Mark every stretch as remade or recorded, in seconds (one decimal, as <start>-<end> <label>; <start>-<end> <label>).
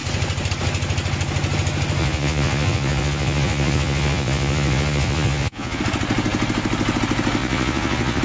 0.0-2.0 recorded; 2.0-5.8 remade; 5.8-7.4 recorded; 7.4-8.2 remade